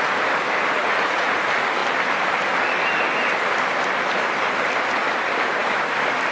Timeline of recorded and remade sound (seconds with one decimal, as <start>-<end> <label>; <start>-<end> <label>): 0.0-0.8 recorded; 0.8-1.4 remade; 1.4-6.3 recorded